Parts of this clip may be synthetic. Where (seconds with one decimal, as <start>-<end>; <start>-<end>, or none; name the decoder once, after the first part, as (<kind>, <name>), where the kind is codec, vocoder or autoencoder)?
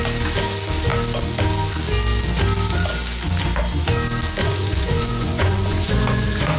4.4-6.6 (vocoder, Vocos)